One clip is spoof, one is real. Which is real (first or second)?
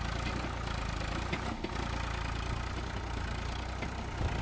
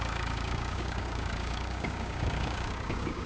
first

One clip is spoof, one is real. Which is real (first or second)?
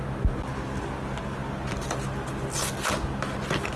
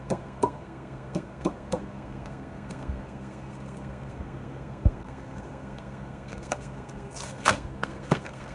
first